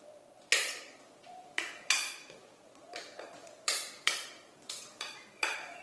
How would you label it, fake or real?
fake